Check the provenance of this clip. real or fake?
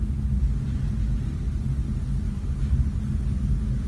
real